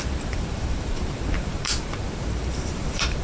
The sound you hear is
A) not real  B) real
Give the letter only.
A